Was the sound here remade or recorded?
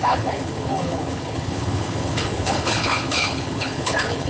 remade